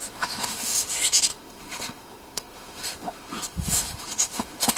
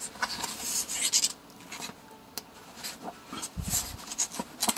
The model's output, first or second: first